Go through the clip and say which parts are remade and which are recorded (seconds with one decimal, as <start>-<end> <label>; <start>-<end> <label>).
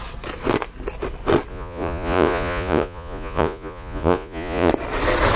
0.0-1.5 recorded; 1.5-4.7 remade; 4.7-5.4 recorded